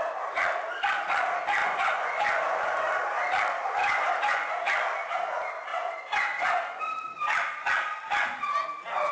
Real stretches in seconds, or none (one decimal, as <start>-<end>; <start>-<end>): 0.0-1.6; 2.9-3.8; 4.5-5.7; 6.8-9.1